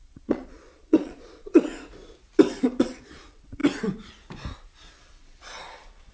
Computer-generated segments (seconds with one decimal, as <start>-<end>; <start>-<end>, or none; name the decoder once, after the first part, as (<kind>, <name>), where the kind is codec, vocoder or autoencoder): 0.0-1.7 (vocoder, Vocos); 2.8-3.6; 4.9-6.1